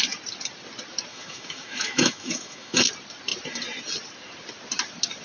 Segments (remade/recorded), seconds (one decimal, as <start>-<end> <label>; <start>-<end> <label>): 0.0-1.1 recorded; 1.1-2.8 remade; 2.8-5.2 recorded